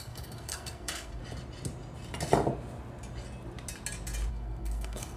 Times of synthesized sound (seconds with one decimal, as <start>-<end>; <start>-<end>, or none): 0.0-1.2; 4.3-5.2